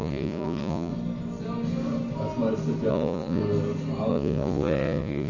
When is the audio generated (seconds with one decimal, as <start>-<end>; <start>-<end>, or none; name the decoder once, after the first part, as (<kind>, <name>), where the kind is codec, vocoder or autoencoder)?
0.0-0.9 (vocoder, Vocos); 2.9-3.4; 4.1-5.3